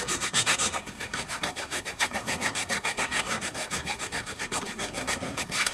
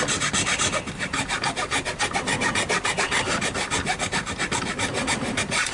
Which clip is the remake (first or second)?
first